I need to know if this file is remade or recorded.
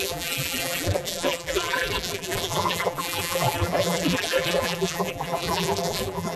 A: remade